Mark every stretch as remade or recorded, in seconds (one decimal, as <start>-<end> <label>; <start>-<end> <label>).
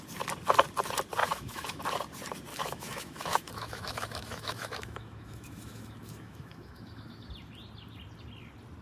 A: 0.0-1.2 recorded; 1.2-1.8 remade; 1.8-2.5 recorded; 2.5-7.3 remade; 7.3-8.8 recorded